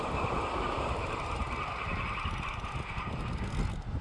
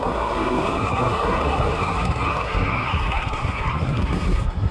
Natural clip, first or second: first